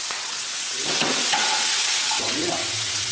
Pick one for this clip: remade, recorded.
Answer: remade